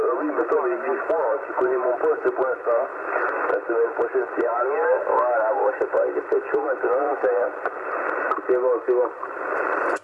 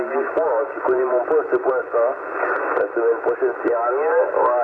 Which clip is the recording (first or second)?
second